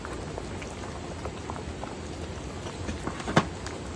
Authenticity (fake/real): real